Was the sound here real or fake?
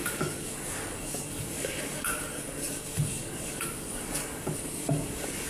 fake